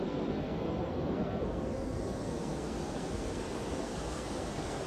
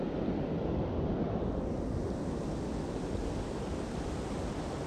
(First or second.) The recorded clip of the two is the second